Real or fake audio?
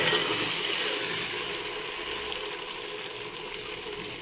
real